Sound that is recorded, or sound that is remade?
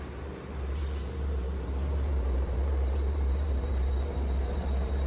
remade